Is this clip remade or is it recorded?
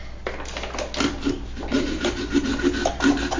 recorded